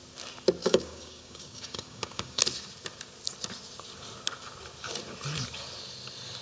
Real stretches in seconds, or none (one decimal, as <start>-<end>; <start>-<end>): 0.0-0.6; 2.4-6.4